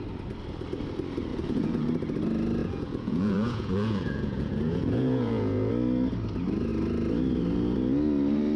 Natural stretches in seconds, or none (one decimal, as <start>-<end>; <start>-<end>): 0.0-1.3; 1.9-2.6; 5.7-8.6